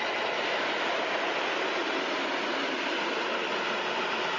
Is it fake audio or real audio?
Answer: real